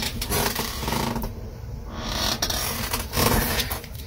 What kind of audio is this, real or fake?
fake